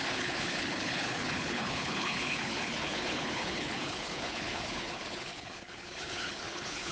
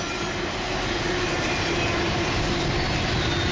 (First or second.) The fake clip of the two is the first